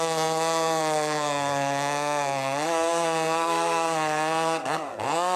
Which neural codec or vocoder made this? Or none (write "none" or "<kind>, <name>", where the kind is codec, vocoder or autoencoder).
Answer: codec, SNAC